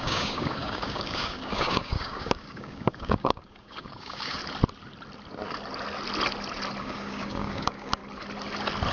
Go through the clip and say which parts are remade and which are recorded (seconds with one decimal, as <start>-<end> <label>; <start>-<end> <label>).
0.0-4.4 remade; 4.4-6.8 recorded; 6.8-8.0 remade; 8.0-8.9 recorded